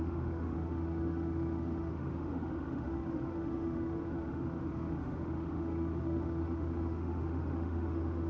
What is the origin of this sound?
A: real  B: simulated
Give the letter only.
B